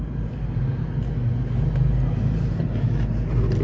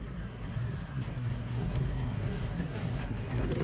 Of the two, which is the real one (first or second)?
first